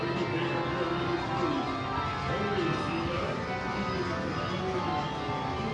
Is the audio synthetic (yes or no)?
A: no